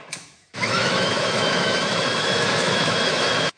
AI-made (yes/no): yes